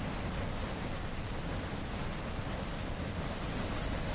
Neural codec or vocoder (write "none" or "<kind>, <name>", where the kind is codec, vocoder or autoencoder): none